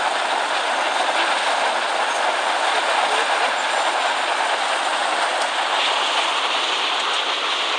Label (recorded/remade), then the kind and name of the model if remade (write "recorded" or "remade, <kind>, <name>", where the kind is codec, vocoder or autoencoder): recorded